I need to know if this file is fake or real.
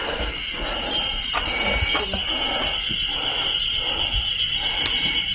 real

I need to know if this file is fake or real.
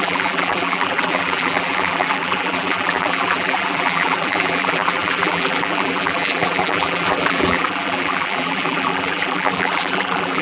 fake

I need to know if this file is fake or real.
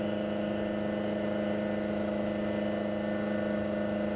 real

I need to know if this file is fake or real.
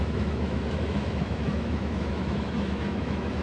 fake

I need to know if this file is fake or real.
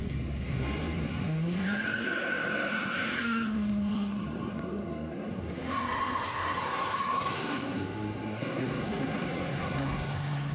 fake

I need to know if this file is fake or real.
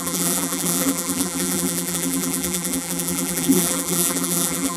fake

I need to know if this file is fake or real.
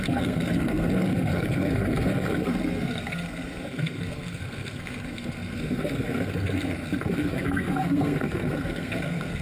fake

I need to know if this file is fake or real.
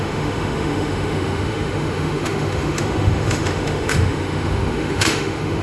fake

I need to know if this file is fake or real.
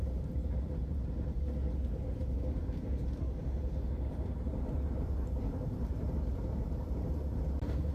fake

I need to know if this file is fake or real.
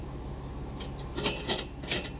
real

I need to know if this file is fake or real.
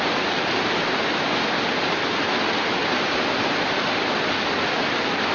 real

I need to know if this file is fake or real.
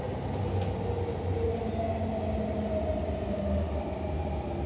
real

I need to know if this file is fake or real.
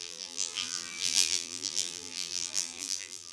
fake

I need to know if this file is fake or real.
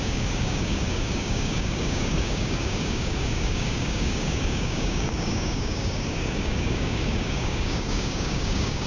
fake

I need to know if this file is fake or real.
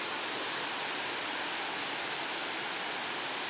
real